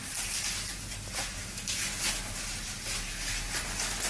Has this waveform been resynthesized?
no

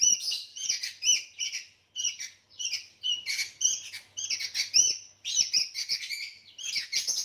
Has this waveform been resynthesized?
no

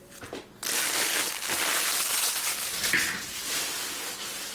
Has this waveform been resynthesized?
no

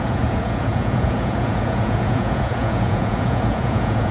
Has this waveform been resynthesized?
yes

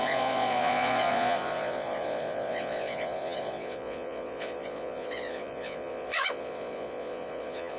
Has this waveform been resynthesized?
yes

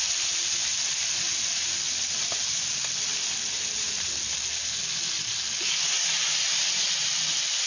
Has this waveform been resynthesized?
no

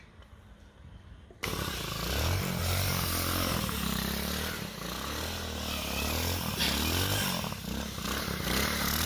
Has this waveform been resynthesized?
no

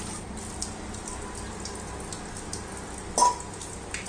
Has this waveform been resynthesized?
no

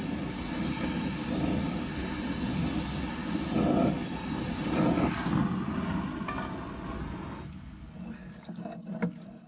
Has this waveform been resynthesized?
no